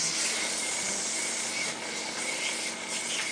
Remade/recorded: recorded